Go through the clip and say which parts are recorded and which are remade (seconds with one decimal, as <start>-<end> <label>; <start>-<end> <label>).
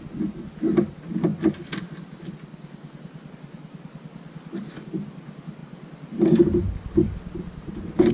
0.0-8.1 recorded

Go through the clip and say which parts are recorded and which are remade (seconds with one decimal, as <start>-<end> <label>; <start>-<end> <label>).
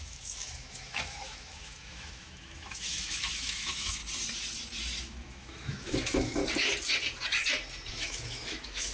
0.0-4.0 remade; 4.0-5.0 recorded; 5.0-6.4 remade; 6.4-7.9 recorded; 7.9-8.9 remade